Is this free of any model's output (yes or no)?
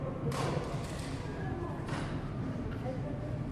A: no